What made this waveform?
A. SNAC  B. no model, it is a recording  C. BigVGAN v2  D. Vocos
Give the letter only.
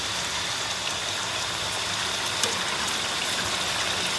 B